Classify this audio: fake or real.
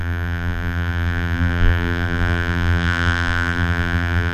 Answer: fake